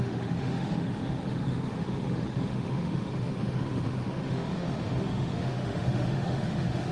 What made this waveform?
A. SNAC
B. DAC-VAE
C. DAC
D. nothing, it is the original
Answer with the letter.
B